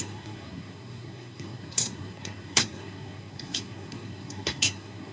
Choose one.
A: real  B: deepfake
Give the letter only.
B